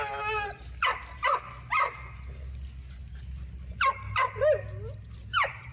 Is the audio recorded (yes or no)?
yes